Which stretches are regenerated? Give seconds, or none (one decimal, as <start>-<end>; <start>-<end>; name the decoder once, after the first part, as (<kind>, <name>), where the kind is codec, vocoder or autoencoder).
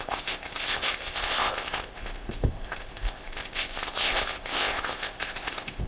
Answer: 0.0-5.9 (codec, ZipCodec)